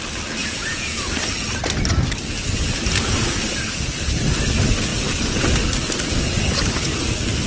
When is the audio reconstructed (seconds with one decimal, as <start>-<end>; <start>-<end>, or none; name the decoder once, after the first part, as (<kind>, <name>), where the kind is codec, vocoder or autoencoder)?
0.4-1.0 (vocoder, Vocos)